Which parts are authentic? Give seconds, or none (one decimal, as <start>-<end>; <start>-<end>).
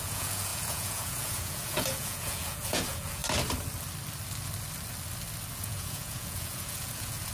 3.2-5.6